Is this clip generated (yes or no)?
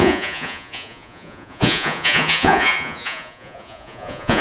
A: yes